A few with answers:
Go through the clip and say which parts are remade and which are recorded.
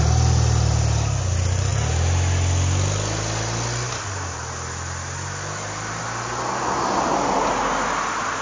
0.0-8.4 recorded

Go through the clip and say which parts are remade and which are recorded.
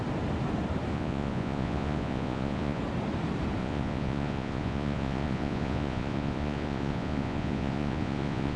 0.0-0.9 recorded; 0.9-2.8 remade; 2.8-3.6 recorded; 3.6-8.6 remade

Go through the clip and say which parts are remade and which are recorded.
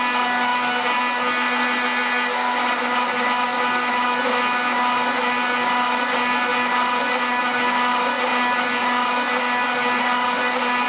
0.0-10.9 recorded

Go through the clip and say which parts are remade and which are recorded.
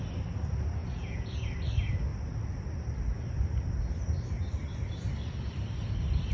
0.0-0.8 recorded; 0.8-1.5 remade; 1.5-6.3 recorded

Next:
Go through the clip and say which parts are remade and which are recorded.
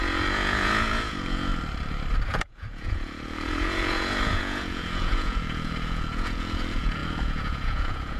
0.0-1.5 remade; 1.5-2.3 recorded; 2.3-8.2 remade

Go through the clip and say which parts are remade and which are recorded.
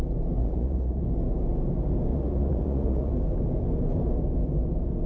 0.0-0.4 recorded; 0.4-1.0 remade; 1.0-2.1 recorded; 2.1-3.1 remade; 3.1-5.1 recorded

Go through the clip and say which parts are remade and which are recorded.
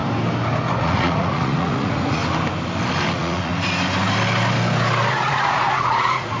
0.0-0.8 recorded; 0.8-2.2 remade; 2.2-3.1 recorded; 3.1-3.5 remade; 3.5-5.1 recorded; 5.1-6.4 remade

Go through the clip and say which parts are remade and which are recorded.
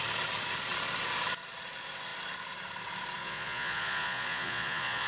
0.0-3.2 recorded; 3.2-5.1 remade